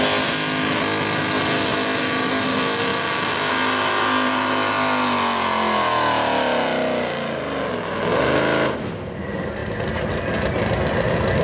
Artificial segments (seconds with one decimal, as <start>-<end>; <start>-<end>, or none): none